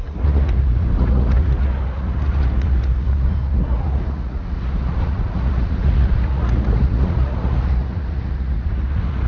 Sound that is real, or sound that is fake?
fake